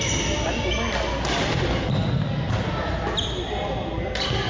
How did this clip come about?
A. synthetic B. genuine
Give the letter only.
B